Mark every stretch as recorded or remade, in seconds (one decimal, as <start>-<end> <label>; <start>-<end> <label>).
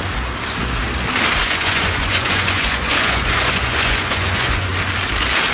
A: 0.0-1.4 recorded; 1.4-4.7 remade; 4.7-5.5 recorded